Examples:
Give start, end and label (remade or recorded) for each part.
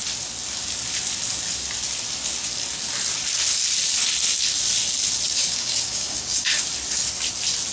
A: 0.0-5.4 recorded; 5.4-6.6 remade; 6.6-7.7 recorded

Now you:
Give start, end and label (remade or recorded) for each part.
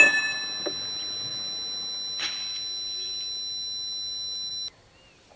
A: 0.0-5.4 recorded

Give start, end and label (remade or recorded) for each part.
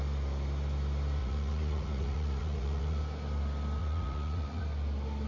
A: 0.0-1.2 recorded; 1.2-3.0 remade; 3.0-3.8 recorded; 3.8-4.6 remade; 4.6-5.3 recorded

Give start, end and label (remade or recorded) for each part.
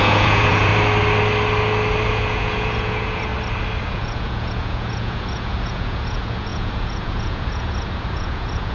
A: 0.0-0.7 remade; 0.7-2.1 recorded; 2.1-3.3 remade; 3.3-3.9 recorded; 3.9-8.7 remade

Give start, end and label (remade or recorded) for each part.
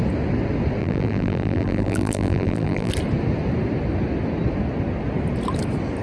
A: 0.0-0.8 recorded; 0.8-2.9 remade; 2.9-6.0 recorded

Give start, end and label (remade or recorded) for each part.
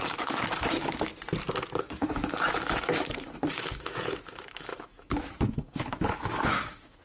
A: 0.0-1.1 remade; 1.1-1.8 recorded; 1.8-7.0 remade